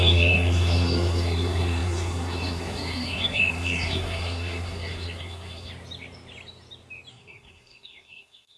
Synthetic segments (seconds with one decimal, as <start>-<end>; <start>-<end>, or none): 0.0-5.7; 7.1-8.6